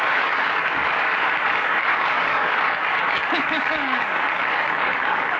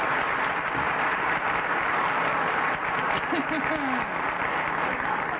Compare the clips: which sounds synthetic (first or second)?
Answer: first